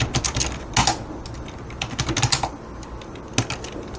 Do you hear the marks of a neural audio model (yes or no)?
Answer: no